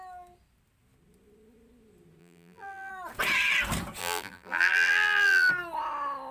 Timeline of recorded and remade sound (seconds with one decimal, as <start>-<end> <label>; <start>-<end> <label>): 0.0-2.2 recorded; 2.2-2.9 remade; 2.9-4.0 recorded; 4.0-5.5 remade; 5.5-6.3 recorded